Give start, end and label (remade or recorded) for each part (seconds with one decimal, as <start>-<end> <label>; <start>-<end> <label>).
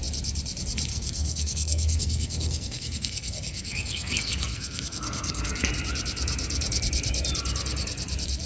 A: 0.0-0.9 recorded; 0.9-5.7 remade; 5.7-8.5 recorded